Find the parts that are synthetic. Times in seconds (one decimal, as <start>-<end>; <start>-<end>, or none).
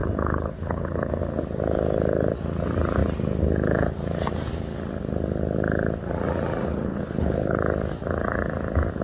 0.0-1.2; 6.6-7.6